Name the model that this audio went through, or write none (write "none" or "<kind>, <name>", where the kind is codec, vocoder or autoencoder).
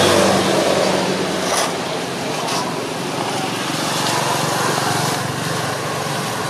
none